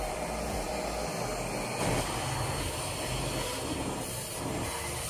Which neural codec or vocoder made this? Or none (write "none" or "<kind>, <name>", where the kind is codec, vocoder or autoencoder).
none